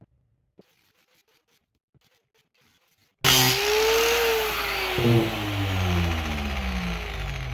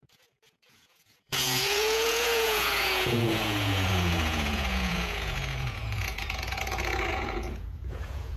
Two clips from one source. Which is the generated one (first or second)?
second